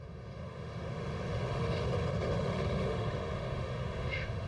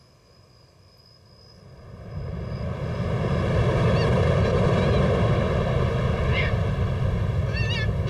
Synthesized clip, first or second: first